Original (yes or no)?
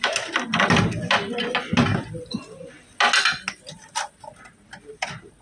yes